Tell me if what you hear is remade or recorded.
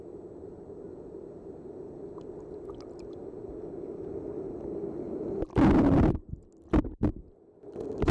recorded